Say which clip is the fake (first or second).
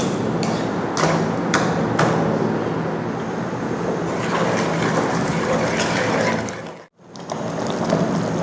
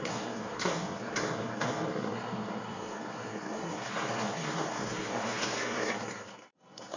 second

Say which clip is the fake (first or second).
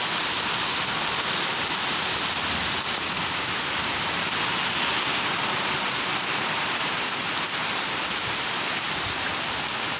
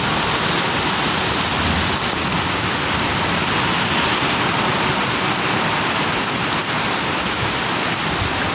first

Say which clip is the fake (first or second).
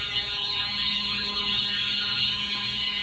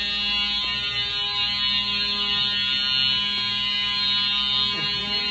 first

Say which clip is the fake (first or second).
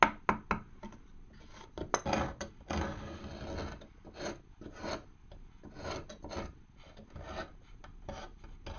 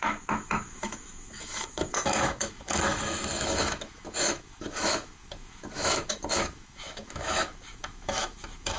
second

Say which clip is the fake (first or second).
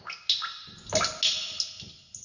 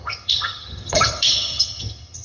second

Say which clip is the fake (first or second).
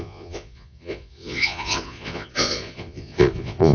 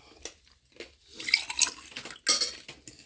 first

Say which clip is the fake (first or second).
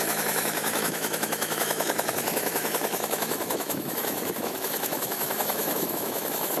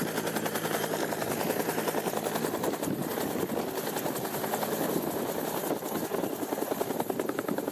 first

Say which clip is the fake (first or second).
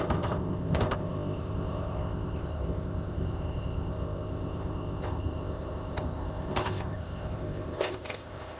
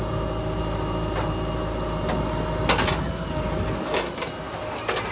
first